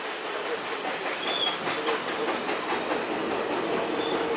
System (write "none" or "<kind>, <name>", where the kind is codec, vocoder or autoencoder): none